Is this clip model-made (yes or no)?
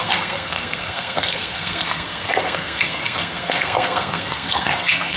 yes